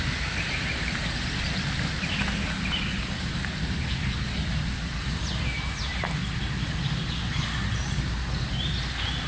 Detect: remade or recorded recorded